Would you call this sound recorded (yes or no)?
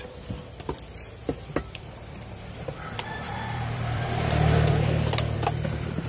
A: no